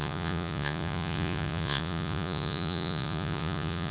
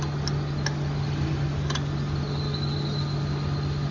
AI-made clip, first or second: first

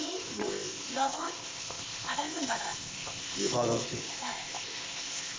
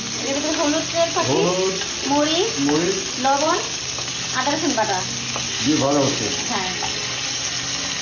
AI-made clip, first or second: first